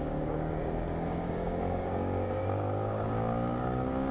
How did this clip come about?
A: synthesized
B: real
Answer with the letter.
A